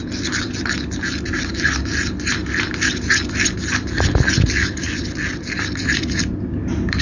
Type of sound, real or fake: real